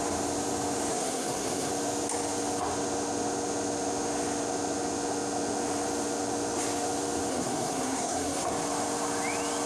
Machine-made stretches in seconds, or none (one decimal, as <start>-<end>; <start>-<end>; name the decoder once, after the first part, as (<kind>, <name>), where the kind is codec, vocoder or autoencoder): 0.9-1.7 (codec, SNAC); 7.3-8.5